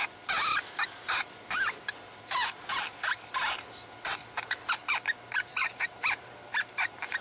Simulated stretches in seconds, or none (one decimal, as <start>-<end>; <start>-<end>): 0.5-1.2; 5.5-6.8